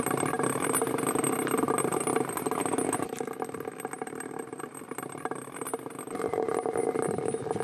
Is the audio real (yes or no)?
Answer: yes